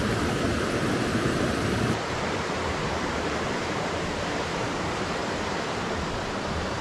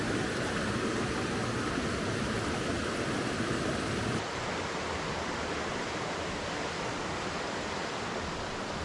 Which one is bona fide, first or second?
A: second